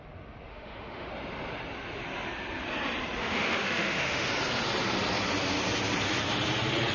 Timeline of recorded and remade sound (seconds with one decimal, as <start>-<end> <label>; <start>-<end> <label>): 0.0-0.5 recorded; 0.5-1.1 remade; 1.1-3.2 recorded; 3.2-4.3 remade; 4.3-6.9 recorded